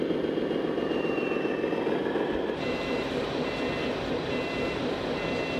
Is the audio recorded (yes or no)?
yes